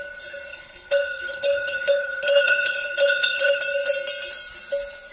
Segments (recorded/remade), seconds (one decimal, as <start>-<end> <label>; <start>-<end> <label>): 0.0-0.5 recorded; 0.5-3.6 remade; 3.6-5.1 recorded